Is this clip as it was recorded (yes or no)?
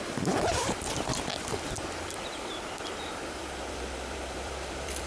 no